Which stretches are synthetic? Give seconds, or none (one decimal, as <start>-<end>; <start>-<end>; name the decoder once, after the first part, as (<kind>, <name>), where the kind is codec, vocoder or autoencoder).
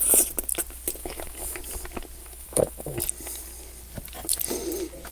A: 1.0-1.6 (autoencoder, DAC-VAE); 2.2-3.0